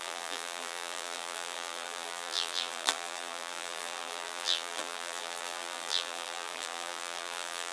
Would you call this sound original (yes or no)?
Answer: no